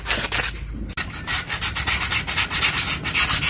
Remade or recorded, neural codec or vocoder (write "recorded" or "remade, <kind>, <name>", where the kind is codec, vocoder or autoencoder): recorded